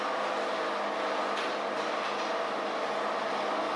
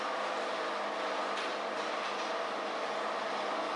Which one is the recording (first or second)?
first